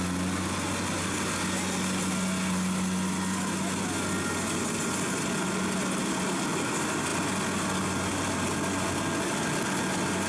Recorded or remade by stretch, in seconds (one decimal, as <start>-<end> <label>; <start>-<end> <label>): 0.0-10.3 recorded